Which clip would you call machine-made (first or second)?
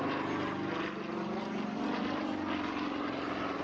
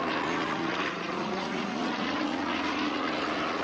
second